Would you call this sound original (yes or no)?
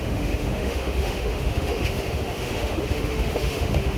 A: no